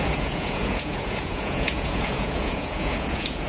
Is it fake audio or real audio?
fake